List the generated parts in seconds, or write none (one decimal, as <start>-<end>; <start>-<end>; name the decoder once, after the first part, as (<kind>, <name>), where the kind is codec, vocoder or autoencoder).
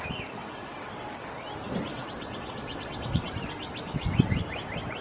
0.4-0.9 (vocoder, WaveNeXt); 1.9-3.3